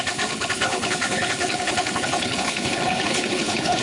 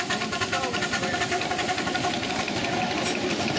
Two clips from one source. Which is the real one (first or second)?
second